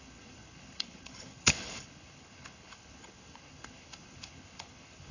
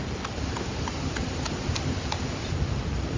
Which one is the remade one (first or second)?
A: first